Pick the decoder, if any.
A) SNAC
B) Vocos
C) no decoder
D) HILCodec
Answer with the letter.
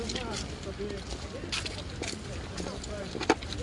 C